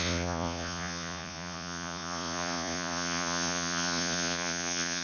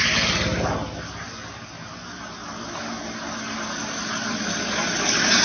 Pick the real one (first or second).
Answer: second